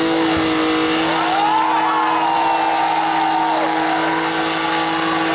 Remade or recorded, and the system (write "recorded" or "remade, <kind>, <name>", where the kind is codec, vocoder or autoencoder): recorded